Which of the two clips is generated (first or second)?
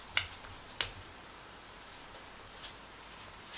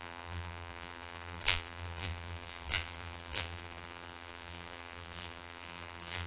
second